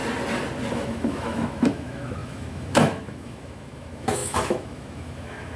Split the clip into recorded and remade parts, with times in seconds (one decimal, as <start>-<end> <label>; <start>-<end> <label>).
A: 0.0-0.7 recorded; 0.7-5.6 remade